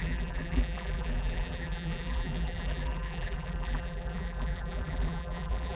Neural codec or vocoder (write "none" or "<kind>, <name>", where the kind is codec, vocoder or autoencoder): vocoder, BigVGAN v2